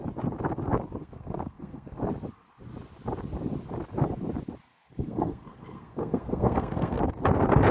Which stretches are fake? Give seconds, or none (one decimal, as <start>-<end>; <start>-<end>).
1.0-2.0; 4.7-7.0